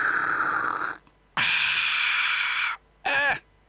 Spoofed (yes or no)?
no